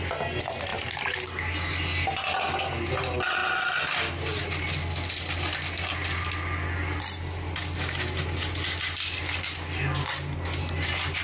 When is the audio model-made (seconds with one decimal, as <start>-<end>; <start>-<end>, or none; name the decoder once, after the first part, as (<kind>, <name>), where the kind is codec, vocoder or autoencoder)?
none